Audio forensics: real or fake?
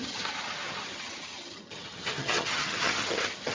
fake